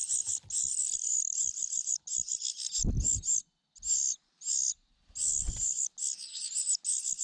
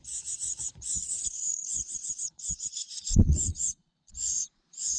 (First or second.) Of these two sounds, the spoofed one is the second